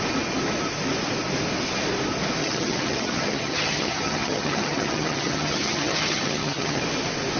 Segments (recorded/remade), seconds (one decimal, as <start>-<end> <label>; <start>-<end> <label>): 0.0-2.4 recorded; 2.4-6.8 remade; 6.8-7.4 recorded